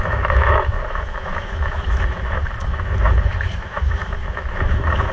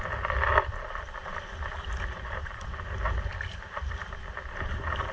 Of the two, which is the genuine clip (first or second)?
second